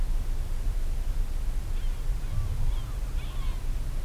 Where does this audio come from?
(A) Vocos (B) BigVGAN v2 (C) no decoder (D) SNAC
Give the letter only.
C